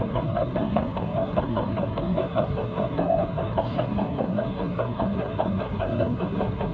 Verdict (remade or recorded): remade